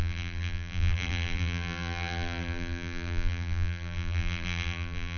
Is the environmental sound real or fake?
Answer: fake